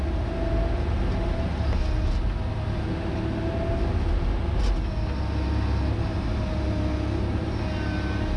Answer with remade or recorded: recorded